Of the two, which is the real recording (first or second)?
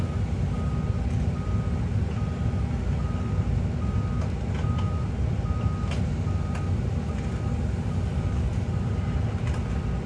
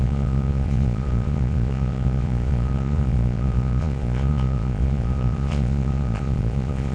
first